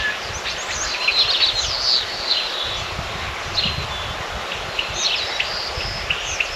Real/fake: real